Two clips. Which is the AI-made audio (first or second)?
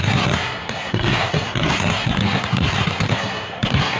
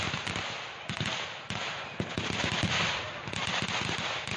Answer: first